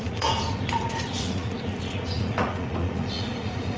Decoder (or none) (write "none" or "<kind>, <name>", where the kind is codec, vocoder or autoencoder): vocoder, Vocos